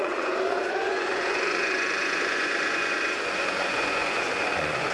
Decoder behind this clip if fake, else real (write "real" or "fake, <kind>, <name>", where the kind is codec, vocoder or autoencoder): fake, vocoder, Vocos